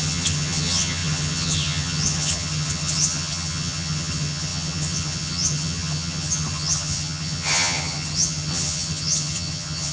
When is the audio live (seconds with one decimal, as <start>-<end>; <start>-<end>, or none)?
none